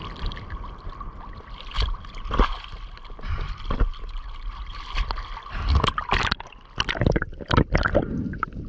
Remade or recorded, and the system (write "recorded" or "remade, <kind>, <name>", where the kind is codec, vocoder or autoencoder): remade, vocoder, BigVGAN v2